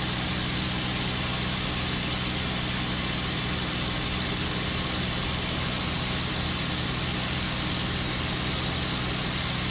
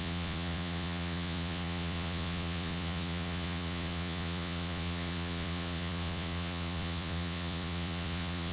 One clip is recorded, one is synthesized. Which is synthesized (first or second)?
second